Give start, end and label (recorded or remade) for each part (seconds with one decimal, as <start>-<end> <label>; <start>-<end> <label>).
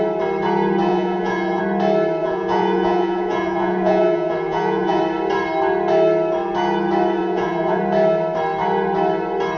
0.0-0.9 recorded; 0.9-1.6 remade; 1.6-2.2 recorded; 2.2-5.0 remade; 5.0-7.2 recorded; 7.2-7.8 remade; 7.8-9.6 recorded